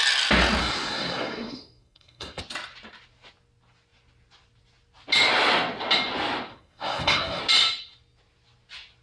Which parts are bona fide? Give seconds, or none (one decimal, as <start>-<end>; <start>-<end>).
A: 0.0-0.6; 2.4-6.5; 7.4-9.0